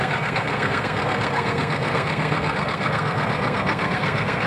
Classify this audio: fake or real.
fake